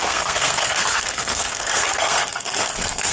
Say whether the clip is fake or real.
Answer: fake